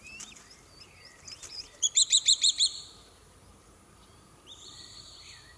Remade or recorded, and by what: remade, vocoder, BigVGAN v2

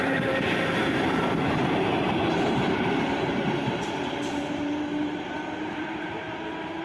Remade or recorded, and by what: remade, vocoder, BigVGAN v2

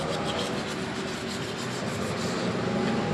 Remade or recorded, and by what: recorded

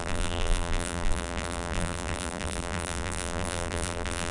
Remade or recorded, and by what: remade, vocoder, BigVGAN v2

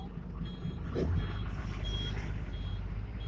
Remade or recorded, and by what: recorded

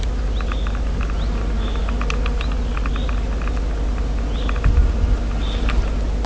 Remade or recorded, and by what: recorded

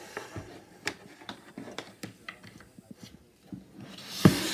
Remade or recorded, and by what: recorded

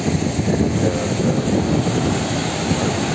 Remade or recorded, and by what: recorded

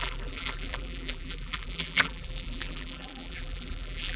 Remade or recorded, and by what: remade, vocoder, BigVGAN v2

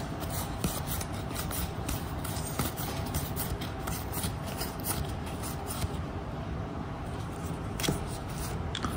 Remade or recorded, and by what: remade, vocoder, BigVGAN v2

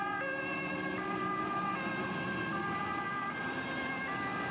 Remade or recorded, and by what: recorded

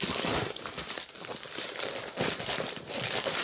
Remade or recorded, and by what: remade, vocoder, BigVGAN v2